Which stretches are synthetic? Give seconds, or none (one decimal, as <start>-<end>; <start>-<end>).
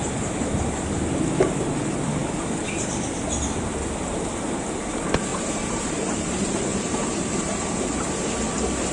5.3-7.6